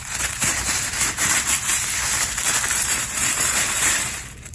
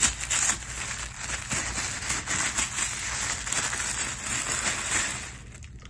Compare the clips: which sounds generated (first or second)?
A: first